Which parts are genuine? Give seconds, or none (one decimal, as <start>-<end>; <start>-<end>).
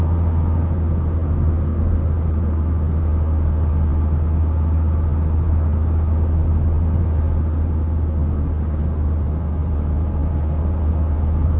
0.0-11.6